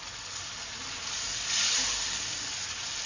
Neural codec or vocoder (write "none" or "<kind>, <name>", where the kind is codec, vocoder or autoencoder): none